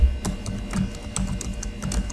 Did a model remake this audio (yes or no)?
no